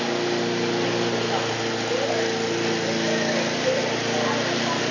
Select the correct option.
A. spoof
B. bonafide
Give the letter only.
B